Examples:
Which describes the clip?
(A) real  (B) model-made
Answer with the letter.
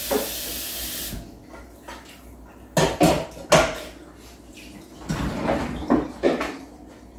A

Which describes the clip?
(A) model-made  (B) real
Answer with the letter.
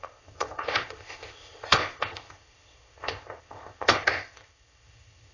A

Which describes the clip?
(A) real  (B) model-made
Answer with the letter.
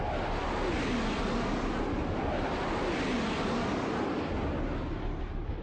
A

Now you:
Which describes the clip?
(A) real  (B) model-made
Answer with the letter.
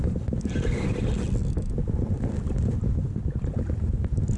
A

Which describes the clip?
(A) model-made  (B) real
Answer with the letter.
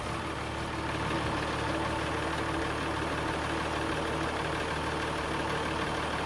B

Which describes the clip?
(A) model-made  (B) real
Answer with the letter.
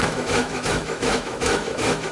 A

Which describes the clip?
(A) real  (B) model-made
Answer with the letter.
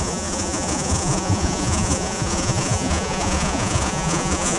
B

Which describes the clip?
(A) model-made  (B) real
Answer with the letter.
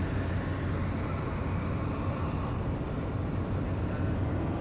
B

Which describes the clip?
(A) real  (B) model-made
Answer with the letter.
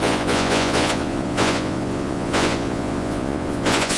B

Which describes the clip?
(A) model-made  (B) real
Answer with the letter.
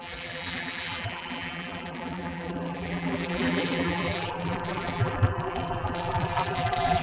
A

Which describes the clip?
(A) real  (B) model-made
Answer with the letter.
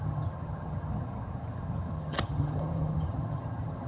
B